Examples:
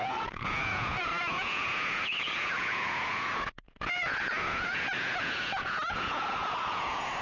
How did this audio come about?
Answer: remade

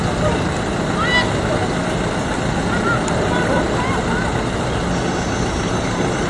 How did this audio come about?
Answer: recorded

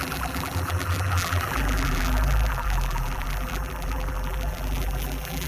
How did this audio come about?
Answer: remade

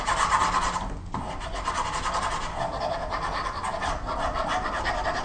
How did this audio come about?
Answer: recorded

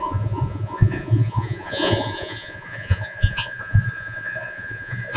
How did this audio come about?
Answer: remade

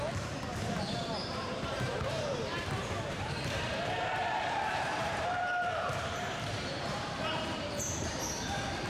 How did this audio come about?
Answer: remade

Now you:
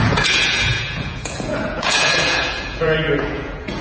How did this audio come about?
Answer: remade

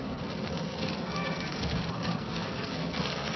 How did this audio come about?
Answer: remade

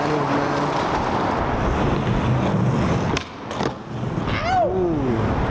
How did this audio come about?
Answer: recorded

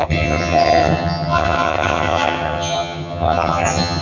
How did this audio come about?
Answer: remade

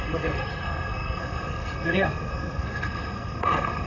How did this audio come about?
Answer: remade